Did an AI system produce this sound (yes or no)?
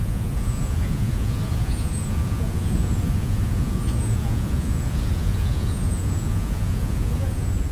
yes